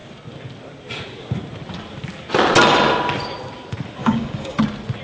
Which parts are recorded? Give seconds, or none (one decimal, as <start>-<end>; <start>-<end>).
0.0-4.0; 4.6-5.0

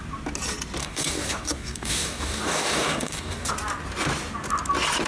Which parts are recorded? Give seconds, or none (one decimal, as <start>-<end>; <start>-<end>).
0.0-0.8; 3.5-5.1